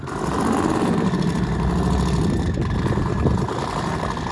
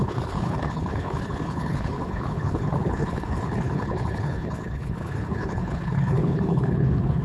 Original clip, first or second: first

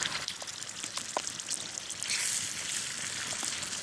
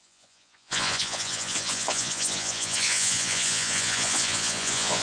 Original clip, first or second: first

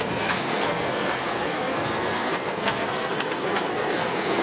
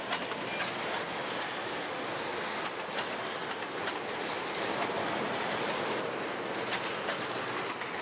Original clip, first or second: second